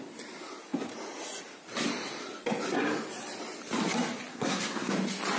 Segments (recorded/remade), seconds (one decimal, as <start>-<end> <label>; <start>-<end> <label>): 0.0-4.3 recorded; 4.3-4.9 remade; 4.9-5.4 recorded